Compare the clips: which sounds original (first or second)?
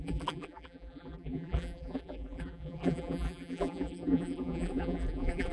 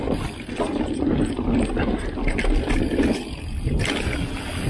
second